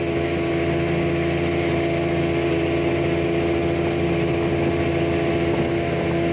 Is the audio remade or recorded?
recorded